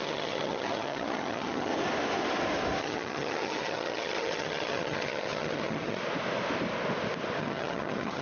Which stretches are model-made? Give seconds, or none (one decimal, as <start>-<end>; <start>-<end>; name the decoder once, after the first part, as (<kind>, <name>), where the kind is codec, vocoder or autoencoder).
0.0-1.7 (vocoder, HiFi-GAN); 2.8-6.0; 7.4-8.2